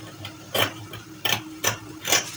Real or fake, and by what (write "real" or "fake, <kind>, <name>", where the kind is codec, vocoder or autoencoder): fake, vocoder, BigVGAN v2